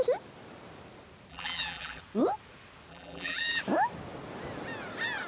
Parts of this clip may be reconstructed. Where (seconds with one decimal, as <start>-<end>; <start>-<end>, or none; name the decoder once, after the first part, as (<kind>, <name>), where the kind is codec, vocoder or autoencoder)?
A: 1.3-2.0 (vocoder, BigVGAN v2); 2.9-3.6